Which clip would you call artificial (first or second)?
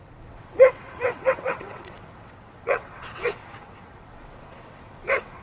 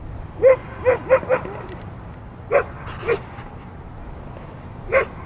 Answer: first